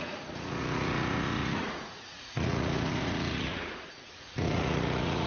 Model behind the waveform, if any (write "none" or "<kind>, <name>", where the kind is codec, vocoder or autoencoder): vocoder, Vocos